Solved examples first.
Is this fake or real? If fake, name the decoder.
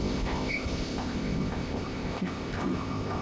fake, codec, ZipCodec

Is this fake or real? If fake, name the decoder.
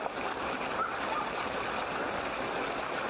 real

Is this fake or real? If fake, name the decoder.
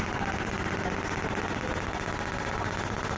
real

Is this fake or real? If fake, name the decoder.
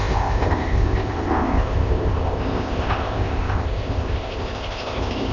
fake, codec, ZipCodec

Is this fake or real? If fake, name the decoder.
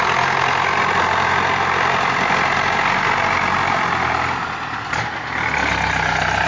real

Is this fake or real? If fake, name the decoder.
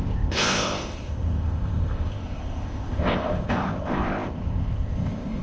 fake, codec, ZipCodec